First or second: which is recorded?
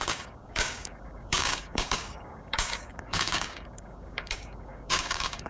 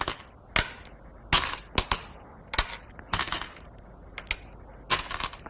second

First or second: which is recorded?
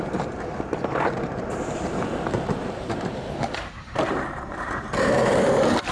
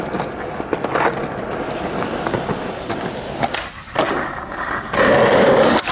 second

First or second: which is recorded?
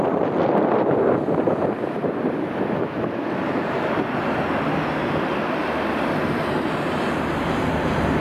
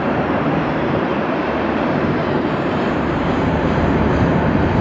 first